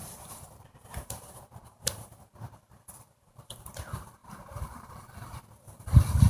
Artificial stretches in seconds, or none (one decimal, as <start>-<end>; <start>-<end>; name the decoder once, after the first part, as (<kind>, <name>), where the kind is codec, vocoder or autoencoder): 0.0-3.8 (vocoder, BigVGAN v2); 4.2-5.4